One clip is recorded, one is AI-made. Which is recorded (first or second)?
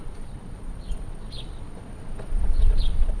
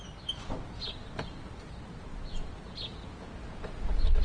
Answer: second